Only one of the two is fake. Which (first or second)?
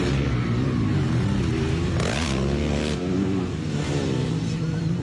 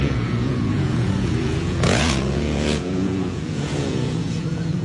second